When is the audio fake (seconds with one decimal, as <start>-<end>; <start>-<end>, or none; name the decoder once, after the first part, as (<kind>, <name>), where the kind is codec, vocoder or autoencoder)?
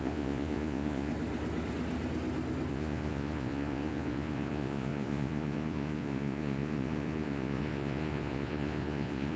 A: 0.0-1.1 (vocoder, Vocos); 2.7-9.4